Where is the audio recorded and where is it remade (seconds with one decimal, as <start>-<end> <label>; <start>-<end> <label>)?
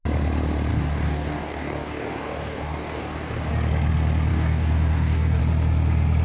0.0-0.7 recorded; 0.7-3.5 remade; 3.5-4.3 recorded; 4.3-5.4 remade; 5.4-6.2 recorded